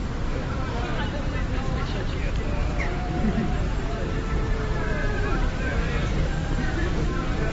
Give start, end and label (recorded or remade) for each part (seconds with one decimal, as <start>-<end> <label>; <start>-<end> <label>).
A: 0.0-0.5 recorded; 0.5-7.5 remade